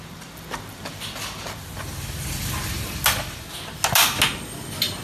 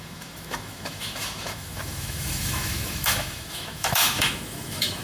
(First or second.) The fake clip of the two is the second